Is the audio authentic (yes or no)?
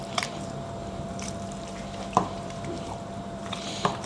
no